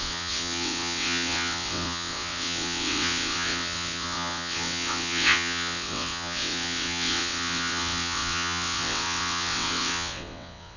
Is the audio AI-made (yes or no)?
yes